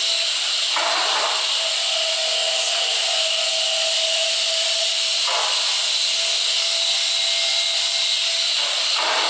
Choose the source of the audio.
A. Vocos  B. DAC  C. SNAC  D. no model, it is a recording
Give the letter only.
D